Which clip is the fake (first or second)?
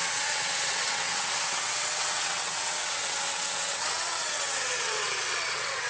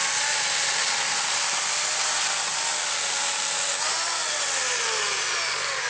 first